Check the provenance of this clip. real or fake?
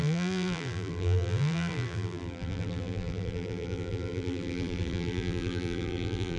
fake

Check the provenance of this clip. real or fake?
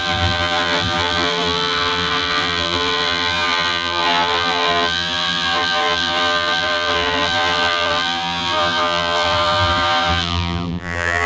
fake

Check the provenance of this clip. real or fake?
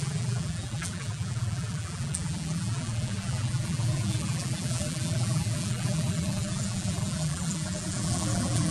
fake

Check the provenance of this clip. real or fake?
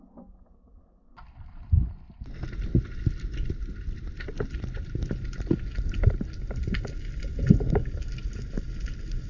real